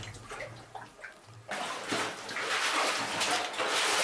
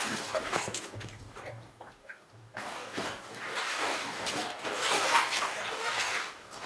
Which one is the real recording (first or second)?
first